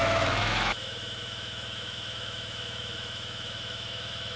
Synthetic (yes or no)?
yes